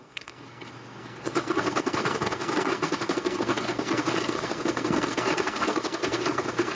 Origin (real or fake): fake